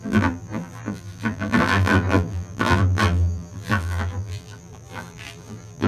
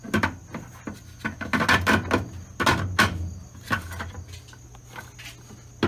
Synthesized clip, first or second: first